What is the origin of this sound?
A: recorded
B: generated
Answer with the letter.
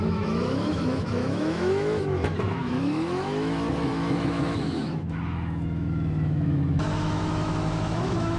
B